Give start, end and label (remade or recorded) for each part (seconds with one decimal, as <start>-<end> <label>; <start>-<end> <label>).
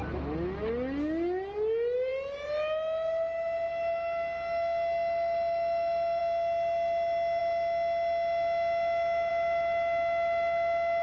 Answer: 0.0-11.0 recorded